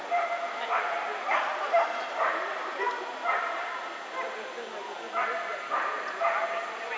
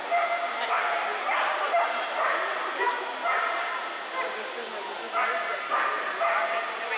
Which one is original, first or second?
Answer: second